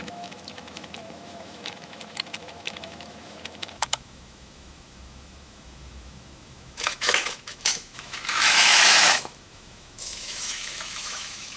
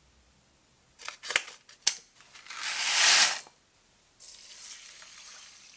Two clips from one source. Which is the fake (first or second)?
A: first